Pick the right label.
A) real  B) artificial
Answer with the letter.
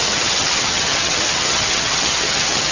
B